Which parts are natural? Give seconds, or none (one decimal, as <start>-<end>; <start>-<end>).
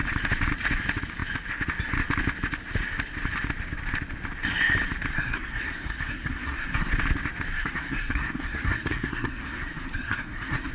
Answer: 0.0-5.1; 6.9-7.5